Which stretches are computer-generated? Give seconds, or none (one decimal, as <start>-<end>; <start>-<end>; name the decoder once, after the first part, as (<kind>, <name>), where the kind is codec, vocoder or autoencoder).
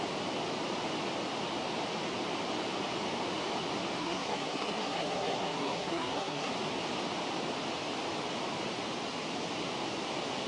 4.0-6.5 (codec, SNAC)